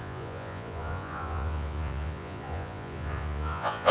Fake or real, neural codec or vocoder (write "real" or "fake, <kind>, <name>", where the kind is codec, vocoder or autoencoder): fake, vocoder, Vocos